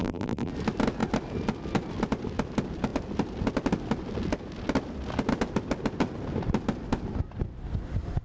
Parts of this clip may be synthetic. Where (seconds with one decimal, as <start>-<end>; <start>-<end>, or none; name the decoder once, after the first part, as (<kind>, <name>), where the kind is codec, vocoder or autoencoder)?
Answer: 0.0-0.5 (vocoder, BigVGAN v2)